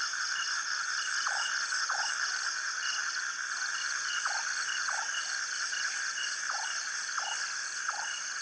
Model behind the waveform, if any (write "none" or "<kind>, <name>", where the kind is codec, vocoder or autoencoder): none